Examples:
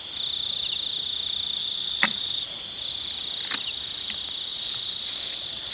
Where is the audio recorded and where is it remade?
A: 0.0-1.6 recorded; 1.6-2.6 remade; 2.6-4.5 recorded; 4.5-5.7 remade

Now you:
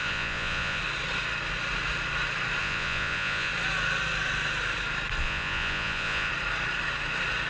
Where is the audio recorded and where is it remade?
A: 0.0-0.8 remade; 0.8-2.6 recorded; 2.6-3.5 remade; 3.5-5.2 recorded; 5.2-6.3 remade; 6.3-7.5 recorded

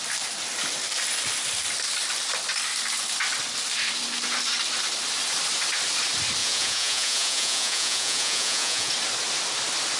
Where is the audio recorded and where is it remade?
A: 0.0-6.4 recorded; 6.4-8.9 remade; 8.9-10.0 recorded

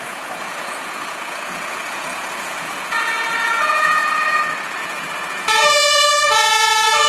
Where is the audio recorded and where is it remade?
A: 0.0-4.0 remade; 4.0-4.8 recorded; 4.8-7.1 remade